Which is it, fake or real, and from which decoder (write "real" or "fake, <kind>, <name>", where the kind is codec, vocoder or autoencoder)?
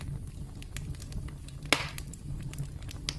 real